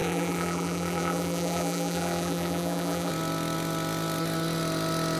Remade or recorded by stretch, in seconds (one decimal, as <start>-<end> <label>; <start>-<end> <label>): 0.0-3.1 remade; 3.1-5.2 recorded